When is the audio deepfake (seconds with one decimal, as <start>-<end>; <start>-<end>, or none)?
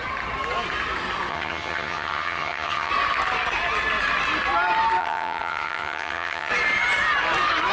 1.3-2.9; 5.0-6.5